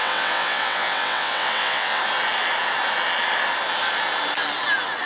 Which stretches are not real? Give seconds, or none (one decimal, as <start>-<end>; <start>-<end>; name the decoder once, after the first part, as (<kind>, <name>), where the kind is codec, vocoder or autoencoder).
0.0-2.0 (vocoder, WaveNeXt)